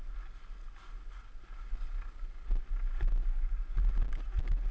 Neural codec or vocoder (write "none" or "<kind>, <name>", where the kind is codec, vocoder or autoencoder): none